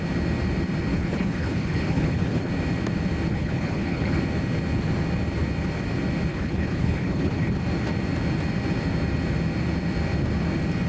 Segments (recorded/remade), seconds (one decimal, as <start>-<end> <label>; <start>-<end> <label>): 0.0-0.9 recorded; 0.9-2.5 remade; 2.5-3.3 recorded; 3.3-4.2 remade; 4.2-6.3 recorded; 6.3-7.5 remade; 7.5-10.9 recorded